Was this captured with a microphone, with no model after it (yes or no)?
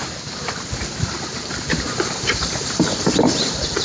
no